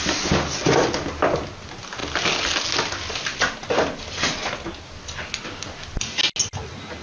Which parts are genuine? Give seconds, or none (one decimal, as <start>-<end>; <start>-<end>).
0.0-7.0